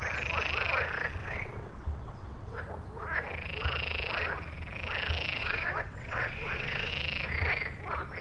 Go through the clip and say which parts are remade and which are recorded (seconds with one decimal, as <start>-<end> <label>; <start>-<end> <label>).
0.0-1.2 recorded; 1.2-2.6 remade; 2.6-5.4 recorded; 5.4-6.9 remade; 6.9-8.2 recorded

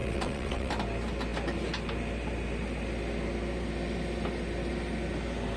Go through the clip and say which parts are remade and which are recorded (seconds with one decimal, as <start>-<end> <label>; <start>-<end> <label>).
0.0-0.7 remade; 0.7-5.6 recorded

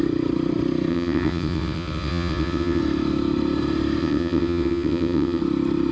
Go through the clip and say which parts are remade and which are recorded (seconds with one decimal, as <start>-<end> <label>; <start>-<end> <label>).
0.0-0.9 recorded; 0.9-2.8 remade; 2.8-4.0 recorded; 4.0-5.4 remade; 5.4-5.9 recorded

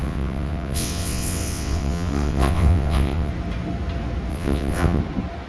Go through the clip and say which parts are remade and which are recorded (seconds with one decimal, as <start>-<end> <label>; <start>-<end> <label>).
0.0-3.3 remade; 3.3-4.3 recorded; 4.3-5.0 remade; 5.0-5.5 recorded

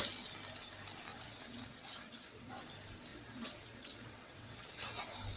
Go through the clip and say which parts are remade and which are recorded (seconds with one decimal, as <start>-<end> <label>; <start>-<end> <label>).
0.0-1.1 recorded; 1.1-2.5 remade; 2.5-3.1 recorded; 3.1-5.0 remade; 5.0-5.4 recorded

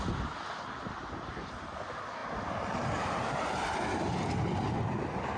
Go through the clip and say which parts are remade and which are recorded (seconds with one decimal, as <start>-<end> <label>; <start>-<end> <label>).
0.0-5.4 recorded

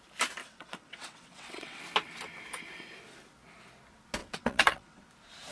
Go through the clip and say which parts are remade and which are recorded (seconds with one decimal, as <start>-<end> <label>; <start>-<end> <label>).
0.0-0.4 recorded; 0.4-1.8 remade; 1.8-4.2 recorded; 4.2-5.0 remade; 5.0-5.5 recorded